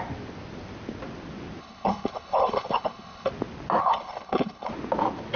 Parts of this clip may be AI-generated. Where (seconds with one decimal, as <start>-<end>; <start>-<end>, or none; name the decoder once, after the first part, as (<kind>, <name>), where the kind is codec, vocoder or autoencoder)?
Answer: 1.6-3.3 (codec, HILCodec); 3.8-4.7